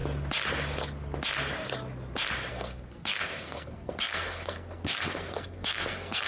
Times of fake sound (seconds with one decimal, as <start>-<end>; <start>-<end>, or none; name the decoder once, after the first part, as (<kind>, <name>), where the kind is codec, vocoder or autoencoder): 2.5-6.3 (codec, SNAC)